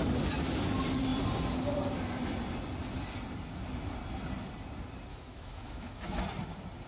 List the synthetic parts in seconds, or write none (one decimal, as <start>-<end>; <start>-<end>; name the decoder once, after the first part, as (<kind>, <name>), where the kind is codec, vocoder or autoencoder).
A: 5.1-6.2 (autoencoder, DAC-VAE)